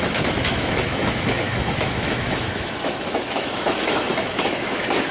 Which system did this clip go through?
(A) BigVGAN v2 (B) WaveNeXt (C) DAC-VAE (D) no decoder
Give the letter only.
C